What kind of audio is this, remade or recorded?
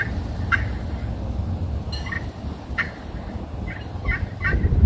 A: recorded